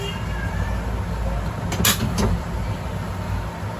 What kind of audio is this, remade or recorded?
recorded